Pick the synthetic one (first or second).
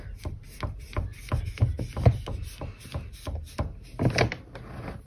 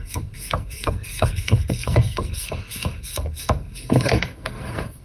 second